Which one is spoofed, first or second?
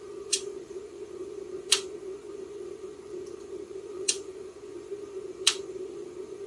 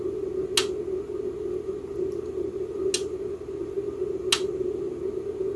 first